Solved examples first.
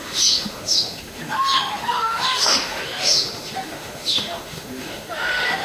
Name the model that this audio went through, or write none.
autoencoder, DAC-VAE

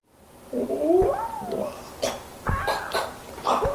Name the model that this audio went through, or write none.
none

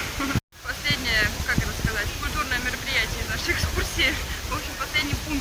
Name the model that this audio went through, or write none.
none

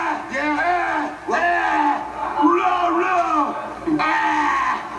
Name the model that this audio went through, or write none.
none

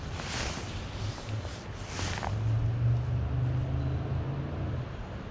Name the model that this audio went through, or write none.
none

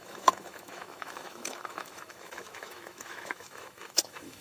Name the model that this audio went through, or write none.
autoencoder, DAC-VAE